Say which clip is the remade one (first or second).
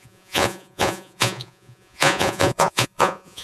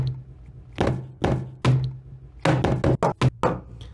first